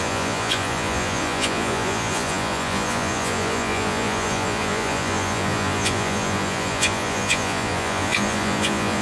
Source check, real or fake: fake